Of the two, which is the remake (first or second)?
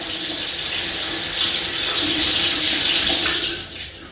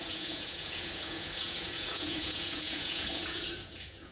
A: second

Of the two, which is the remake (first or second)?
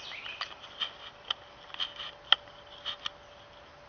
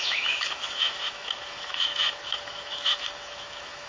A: second